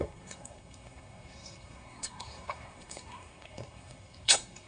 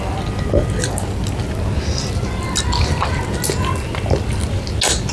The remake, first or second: first